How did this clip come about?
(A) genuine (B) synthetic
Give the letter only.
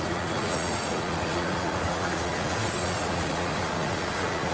B